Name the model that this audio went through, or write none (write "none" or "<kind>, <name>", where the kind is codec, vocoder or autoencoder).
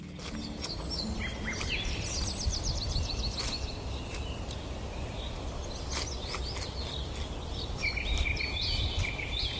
none